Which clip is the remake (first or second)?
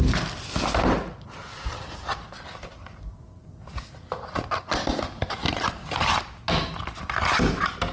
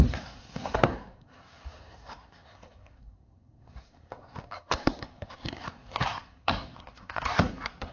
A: second